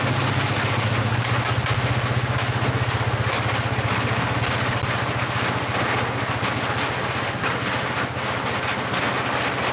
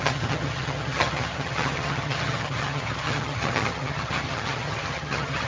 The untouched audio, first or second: first